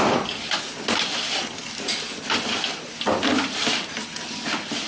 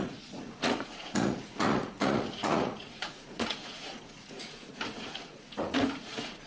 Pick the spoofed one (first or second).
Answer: second